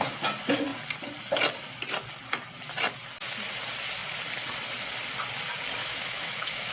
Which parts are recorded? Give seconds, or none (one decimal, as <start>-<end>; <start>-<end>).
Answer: 0.0-5.8